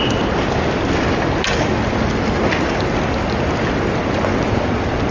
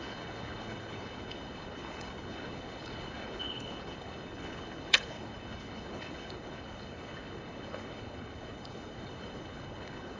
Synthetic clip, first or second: second